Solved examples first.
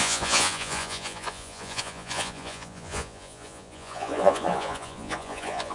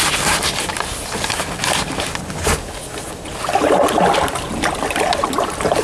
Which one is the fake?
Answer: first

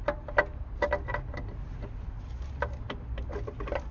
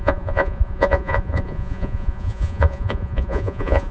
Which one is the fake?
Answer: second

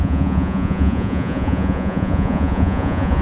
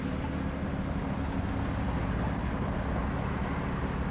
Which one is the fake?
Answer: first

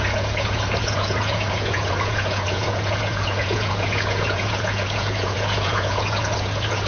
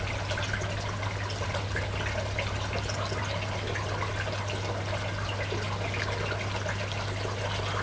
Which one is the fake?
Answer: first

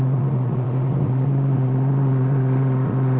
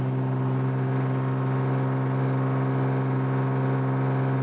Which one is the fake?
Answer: first